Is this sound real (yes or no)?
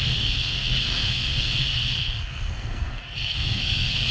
no